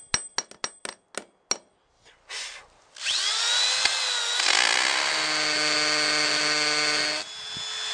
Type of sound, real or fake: real